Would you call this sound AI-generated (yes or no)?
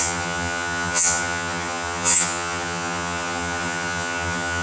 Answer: yes